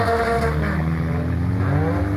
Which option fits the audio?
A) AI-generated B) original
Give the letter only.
B